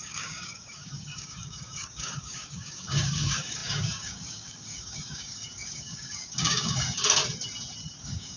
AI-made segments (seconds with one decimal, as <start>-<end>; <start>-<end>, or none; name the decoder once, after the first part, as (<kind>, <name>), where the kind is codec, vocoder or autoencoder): 0.0-7.2 (codec, DAC); 8.0-8.4